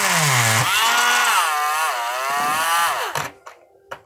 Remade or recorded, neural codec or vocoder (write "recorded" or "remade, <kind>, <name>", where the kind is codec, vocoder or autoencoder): recorded